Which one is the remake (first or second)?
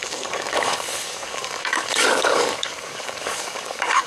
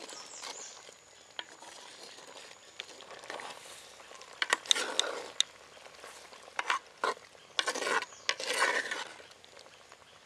first